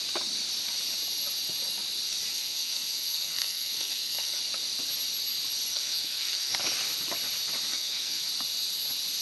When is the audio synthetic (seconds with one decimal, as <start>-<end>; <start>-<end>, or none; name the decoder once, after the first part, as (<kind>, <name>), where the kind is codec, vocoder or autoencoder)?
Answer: 2.3-4.4 (codec, SNAC); 5.7-6.5; 7.7-8.3